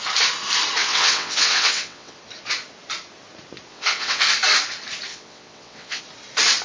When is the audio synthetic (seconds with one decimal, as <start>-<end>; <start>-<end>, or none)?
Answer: 0.8-2.2; 3.7-4.2; 5.1-6.0